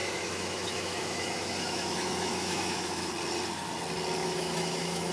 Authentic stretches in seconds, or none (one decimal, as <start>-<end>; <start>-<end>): 3.1-4.2